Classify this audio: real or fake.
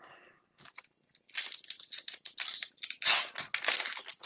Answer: real